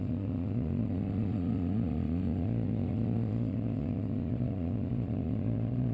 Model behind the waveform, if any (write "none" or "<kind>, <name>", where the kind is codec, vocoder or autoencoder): vocoder, Vocos